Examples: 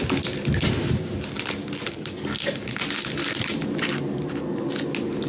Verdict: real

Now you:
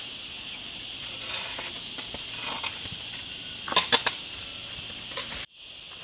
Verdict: real